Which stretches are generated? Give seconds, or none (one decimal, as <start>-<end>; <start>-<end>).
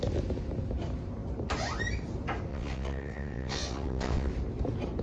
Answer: 2.5-4.3